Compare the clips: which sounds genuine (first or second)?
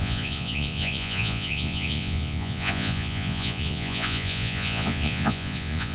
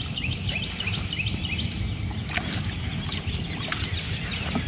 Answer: second